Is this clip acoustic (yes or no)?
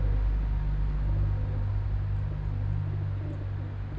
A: yes